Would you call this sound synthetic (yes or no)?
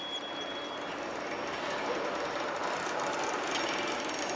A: no